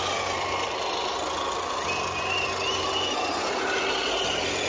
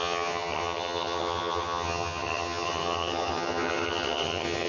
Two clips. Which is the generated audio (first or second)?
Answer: second